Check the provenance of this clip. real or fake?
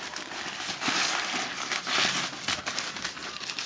real